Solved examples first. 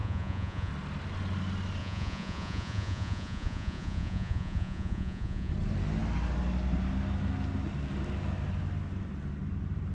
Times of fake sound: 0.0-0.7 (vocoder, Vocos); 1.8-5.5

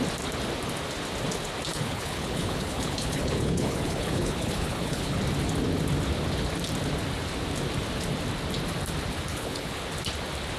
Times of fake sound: 1.7-5.2 (codec, HILCodec); 9.3-9.8

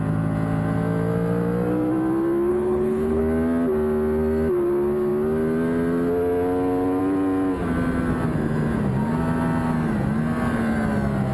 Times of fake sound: 2.5-3.2 (codec, HILCodec)

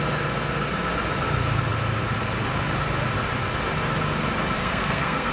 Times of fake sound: 4.6-5.3 (codec, SNAC)

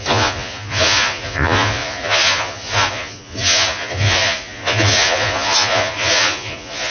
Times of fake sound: 0.0-6.9 (vocoder, Vocos)